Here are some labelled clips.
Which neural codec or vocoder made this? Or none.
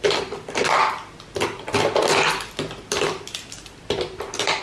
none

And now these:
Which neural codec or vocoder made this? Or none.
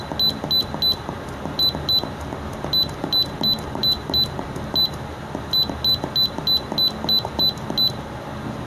none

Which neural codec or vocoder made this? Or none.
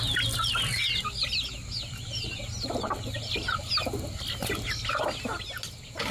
none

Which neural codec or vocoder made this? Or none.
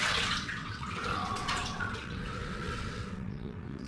vocoder, WaveNeXt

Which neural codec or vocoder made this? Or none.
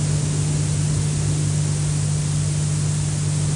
none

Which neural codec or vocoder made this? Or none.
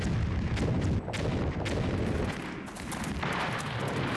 none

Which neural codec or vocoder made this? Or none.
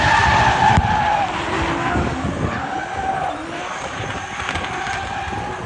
none